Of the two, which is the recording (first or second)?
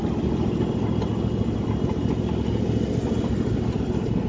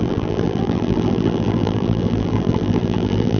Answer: first